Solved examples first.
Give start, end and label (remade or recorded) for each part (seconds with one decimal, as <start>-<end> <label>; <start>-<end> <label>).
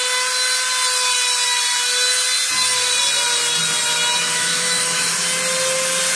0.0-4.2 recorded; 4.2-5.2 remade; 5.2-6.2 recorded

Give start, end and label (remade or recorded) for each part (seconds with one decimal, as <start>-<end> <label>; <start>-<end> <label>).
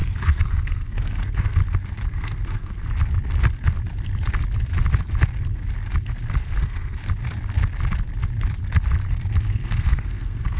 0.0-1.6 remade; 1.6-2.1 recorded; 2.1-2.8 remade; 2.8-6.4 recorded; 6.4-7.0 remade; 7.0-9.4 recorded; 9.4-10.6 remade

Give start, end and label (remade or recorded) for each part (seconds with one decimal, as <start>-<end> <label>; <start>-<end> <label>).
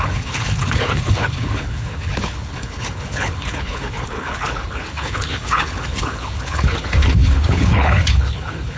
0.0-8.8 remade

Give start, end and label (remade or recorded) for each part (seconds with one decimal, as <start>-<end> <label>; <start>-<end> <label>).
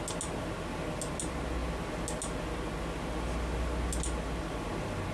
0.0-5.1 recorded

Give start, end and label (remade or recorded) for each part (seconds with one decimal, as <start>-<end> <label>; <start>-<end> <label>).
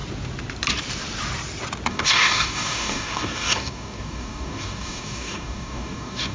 0.0-1.9 recorded; 1.9-6.3 remade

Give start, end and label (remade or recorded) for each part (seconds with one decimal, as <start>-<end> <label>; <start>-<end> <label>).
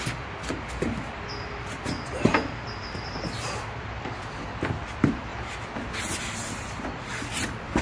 0.0-7.8 recorded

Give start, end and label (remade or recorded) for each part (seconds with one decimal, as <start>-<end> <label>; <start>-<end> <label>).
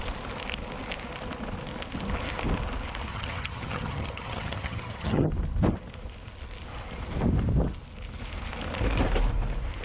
0.0-3.1 recorded; 3.1-5.3 remade; 5.3-9.8 recorded